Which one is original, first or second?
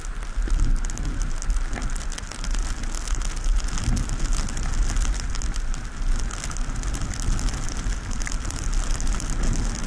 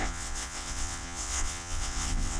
first